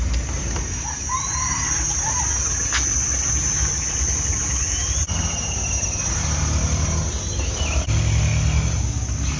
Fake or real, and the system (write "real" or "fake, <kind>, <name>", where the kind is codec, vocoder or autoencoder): real